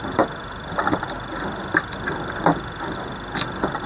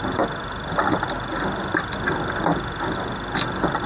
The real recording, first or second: second